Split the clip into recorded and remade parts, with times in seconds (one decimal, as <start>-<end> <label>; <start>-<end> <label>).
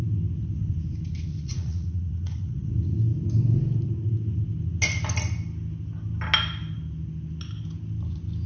0.0-1.3 recorded; 1.3-2.7 remade; 2.7-8.5 recorded